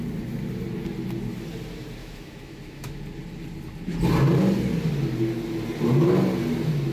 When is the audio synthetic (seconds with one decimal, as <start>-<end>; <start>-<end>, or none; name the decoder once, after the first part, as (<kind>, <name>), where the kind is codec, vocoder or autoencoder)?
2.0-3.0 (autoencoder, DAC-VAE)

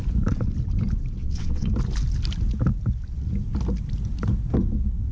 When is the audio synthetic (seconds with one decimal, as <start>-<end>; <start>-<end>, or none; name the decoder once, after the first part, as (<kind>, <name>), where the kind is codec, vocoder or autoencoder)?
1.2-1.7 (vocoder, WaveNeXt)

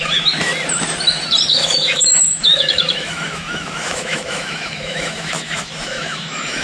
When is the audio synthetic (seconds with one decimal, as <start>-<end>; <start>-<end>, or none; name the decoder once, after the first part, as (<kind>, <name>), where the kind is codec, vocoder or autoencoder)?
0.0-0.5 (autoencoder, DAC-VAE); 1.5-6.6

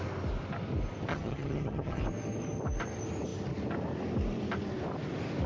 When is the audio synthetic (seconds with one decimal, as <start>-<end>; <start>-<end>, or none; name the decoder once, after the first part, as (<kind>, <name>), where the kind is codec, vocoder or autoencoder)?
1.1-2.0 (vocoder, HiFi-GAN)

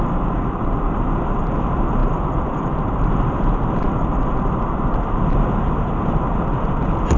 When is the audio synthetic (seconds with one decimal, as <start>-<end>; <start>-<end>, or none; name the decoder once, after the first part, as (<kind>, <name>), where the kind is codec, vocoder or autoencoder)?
2.0-5.1 (vocoder, BigVGAN v2)

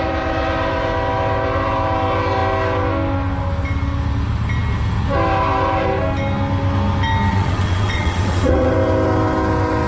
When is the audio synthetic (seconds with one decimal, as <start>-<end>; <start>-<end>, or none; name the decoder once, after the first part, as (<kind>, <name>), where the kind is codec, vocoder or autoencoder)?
7.3-8.7 (vocoder, WaveNeXt)

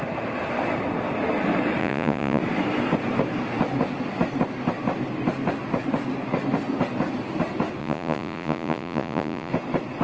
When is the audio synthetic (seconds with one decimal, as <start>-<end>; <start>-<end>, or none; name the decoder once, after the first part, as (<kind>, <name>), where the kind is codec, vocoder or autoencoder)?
1.8-2.4 (vocoder, Vocos); 7.8-9.5